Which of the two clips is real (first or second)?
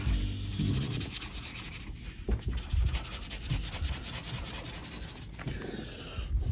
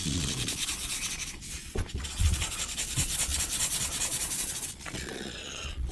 first